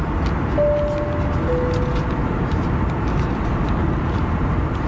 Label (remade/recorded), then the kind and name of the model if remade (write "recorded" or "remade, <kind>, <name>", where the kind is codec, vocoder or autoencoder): recorded